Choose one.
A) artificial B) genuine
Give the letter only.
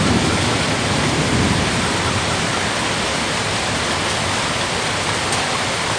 B